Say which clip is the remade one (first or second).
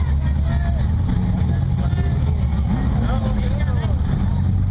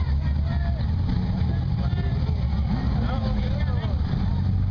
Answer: second